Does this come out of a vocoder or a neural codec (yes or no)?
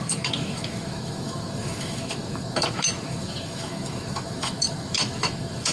yes